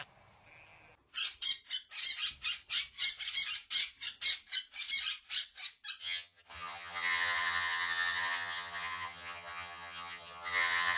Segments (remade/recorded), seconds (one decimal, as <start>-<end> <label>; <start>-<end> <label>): 0.0-6.0 recorded; 6.0-11.0 remade